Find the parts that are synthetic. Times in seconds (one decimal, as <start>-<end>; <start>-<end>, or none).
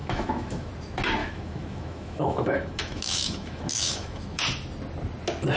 0.0-0.7; 1.2-4.4